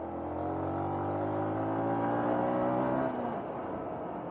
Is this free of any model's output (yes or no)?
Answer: yes